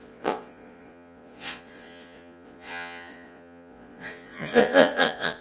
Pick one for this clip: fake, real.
fake